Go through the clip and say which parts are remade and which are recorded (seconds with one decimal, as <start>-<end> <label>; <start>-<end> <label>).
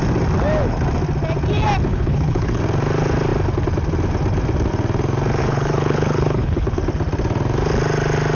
0.0-1.9 recorded; 1.9-2.6 remade; 2.6-5.4 recorded; 5.4-6.8 remade; 6.8-8.3 recorded